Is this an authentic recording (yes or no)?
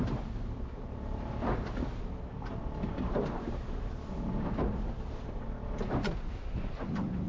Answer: yes